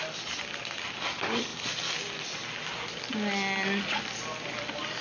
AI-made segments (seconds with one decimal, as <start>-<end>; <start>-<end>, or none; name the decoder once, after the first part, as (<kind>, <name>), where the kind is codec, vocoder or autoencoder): none